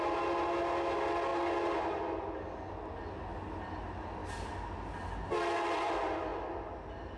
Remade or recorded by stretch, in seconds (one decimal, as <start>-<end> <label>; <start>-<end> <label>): 0.0-7.2 recorded